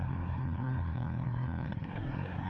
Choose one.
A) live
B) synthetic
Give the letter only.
B